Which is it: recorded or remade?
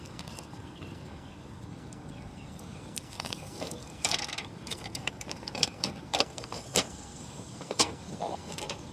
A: remade